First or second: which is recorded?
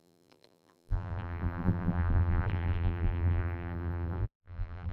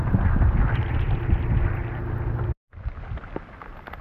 second